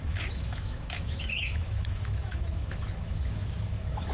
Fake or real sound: fake